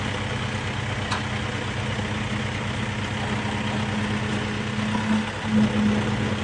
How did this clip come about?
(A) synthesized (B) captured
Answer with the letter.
B